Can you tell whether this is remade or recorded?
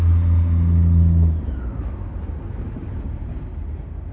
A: recorded